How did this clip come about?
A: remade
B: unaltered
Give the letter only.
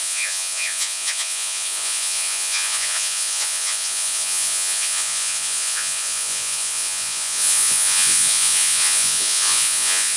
A